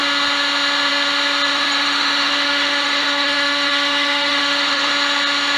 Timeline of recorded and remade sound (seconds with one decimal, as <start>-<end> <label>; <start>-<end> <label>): 0.0-1.5 recorded; 1.5-4.9 remade; 4.9-5.6 recorded

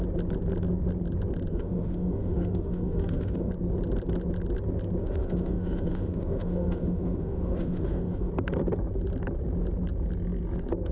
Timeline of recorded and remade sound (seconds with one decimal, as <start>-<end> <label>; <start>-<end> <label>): 0.0-1.5 recorded; 1.5-3.5 remade; 3.5-5.0 recorded; 5.0-8.3 remade; 8.3-10.9 recorded